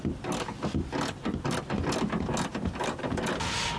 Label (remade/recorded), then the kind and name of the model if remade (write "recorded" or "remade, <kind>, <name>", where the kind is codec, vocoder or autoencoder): recorded